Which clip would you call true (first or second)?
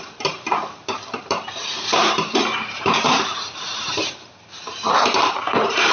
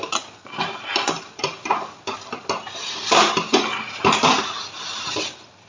second